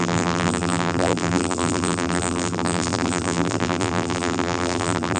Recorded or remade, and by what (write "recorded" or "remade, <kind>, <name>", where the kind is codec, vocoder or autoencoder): remade, vocoder, BigVGAN v2